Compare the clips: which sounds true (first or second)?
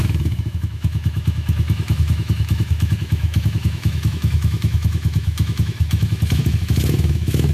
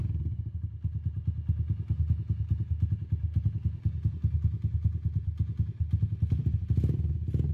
second